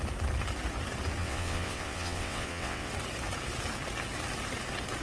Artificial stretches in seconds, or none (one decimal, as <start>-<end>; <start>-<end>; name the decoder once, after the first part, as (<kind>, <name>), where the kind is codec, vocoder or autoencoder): 1.2-2.9 (vocoder, WaveNeXt)

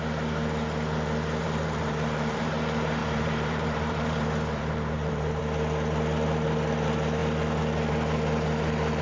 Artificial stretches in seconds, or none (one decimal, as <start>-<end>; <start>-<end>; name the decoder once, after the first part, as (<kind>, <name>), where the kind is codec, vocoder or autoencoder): 1.4-2.5 (vocoder, BigVGAN v2); 3.0-5.4

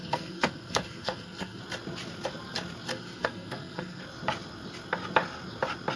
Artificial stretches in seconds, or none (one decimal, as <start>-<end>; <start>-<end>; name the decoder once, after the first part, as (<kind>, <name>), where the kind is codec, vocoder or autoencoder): 0.0-1.6 (codec, SNAC); 2.9-4.0

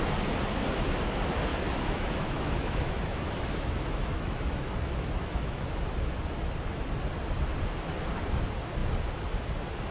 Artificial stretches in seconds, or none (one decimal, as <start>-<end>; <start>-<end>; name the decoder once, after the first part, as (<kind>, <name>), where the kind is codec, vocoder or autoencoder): 1.5-6.2 (autoencoder, DAC-VAE)

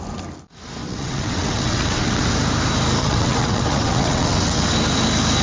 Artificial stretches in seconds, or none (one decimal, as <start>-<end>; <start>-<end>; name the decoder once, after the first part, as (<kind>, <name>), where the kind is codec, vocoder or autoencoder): 0.8-2.3 (vocoder, WaveNeXt); 3.0-4.7

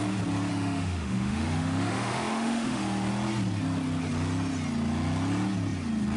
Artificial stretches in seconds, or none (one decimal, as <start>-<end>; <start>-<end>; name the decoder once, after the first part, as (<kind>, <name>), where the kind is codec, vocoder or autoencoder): 0.5-2.8 (autoencoder, DAC-VAE)

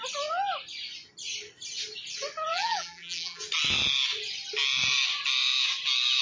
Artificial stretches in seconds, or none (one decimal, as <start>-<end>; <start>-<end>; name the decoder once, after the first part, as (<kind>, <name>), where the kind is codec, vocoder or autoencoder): 2.5-3.4 (vocoder, BigVGAN v2)

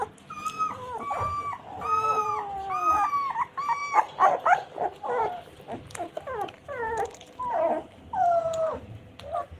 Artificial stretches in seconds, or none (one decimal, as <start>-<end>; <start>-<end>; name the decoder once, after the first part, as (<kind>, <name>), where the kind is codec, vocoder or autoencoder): none